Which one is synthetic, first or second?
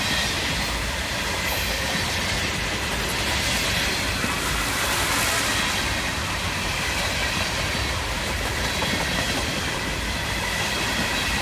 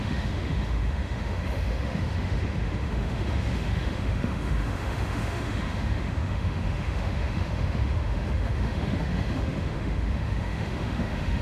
second